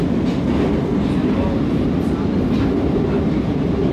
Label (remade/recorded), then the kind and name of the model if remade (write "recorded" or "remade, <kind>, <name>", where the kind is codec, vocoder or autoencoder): recorded